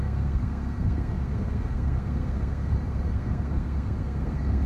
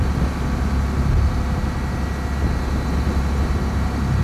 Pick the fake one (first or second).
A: first